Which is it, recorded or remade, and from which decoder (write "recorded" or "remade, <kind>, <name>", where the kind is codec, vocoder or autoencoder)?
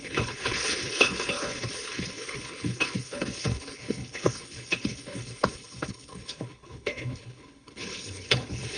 remade, codec, HILCodec